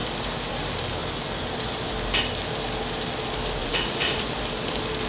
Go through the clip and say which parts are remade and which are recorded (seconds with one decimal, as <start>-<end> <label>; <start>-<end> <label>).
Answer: 0.0-3.6 recorded; 3.6-4.3 remade; 4.3-5.1 recorded